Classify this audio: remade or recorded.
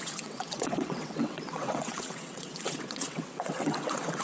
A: remade